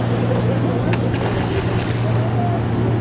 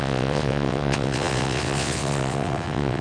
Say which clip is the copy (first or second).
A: second